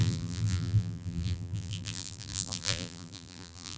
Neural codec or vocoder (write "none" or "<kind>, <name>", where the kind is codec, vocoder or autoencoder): vocoder, BigVGAN v2